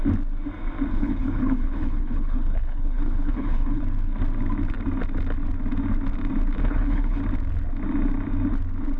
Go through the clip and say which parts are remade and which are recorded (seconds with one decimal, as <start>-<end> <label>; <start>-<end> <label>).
0.0-0.9 recorded; 0.9-3.8 remade; 3.8-6.6 recorded; 6.6-7.2 remade; 7.2-9.0 recorded